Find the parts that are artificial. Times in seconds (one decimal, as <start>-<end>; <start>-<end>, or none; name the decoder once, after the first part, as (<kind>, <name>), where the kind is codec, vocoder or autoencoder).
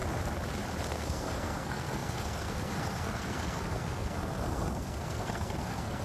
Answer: 0.9-6.0 (codec, SNAC)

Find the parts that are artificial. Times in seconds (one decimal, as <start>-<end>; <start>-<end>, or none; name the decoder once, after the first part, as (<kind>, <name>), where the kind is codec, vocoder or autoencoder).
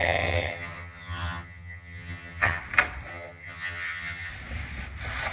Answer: 0.0-2.6 (vocoder, HiFi-GAN); 3.1-4.3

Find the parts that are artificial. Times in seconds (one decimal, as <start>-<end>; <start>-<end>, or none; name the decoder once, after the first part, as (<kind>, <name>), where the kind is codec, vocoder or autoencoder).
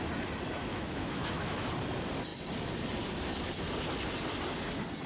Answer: 0.7-1.7 (autoencoder, DAC-VAE)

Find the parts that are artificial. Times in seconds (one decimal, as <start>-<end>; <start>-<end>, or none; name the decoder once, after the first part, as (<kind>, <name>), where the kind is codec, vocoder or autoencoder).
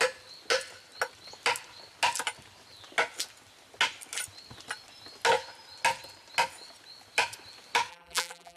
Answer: 7.9-8.6 (vocoder, BigVGAN v2)